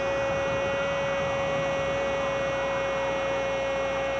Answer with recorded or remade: recorded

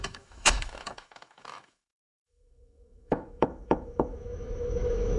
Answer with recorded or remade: remade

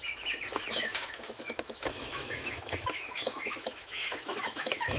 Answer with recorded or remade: remade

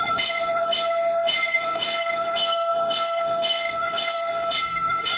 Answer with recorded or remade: remade